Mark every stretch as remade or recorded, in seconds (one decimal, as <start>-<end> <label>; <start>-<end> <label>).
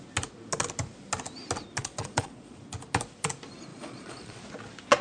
0.0-1.8 recorded; 1.8-2.6 remade; 2.6-3.7 recorded; 3.7-4.4 remade; 4.4-5.0 recorded